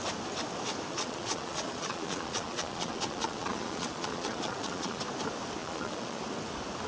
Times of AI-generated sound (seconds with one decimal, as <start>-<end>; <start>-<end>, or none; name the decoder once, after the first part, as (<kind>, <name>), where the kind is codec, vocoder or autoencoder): 0.9-5.0 (vocoder, Vocos); 5.6-6.2